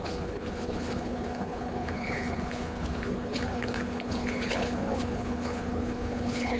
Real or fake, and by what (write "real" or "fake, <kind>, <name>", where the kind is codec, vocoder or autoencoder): fake, codec, HILCodec